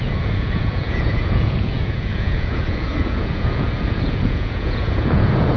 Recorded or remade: remade